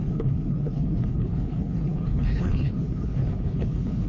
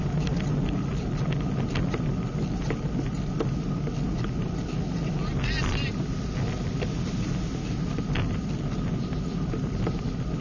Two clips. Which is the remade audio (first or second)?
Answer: first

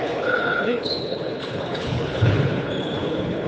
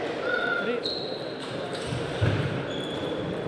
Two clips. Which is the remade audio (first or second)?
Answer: first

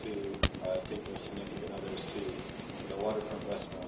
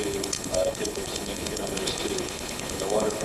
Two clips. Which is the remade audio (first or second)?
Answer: second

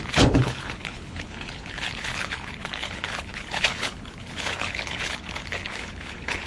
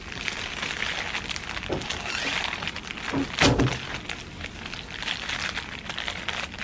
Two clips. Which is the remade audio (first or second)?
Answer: first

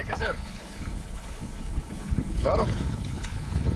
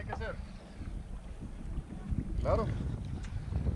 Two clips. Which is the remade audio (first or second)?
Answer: first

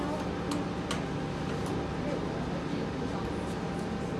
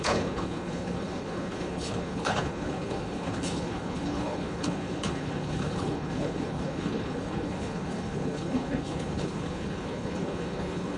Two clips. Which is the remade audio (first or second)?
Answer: second